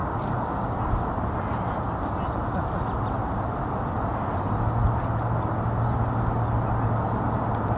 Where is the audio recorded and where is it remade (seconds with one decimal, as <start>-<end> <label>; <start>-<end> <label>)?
0.0-0.8 remade; 0.8-7.8 recorded